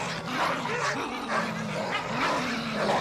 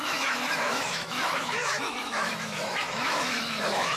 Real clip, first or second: first